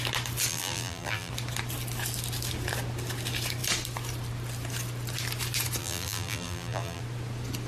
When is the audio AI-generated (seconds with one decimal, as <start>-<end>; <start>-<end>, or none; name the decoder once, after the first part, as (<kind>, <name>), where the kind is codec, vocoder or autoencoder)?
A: 0.5-1.3 (vocoder, BigVGAN v2); 5.8-7.0